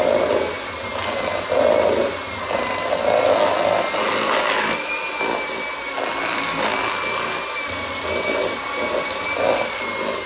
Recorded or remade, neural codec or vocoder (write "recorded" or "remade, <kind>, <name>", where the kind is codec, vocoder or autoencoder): recorded